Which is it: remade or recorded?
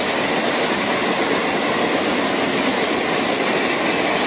recorded